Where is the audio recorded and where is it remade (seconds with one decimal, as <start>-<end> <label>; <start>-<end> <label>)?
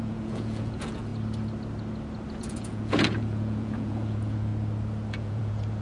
0.0-1.1 remade; 1.1-2.4 recorded; 2.4-4.5 remade; 4.5-5.1 recorded; 5.1-5.8 remade